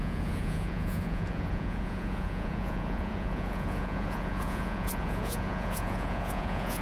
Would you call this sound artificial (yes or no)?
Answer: yes